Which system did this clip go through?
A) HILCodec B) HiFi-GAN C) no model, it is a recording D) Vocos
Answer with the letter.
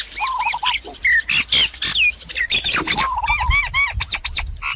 C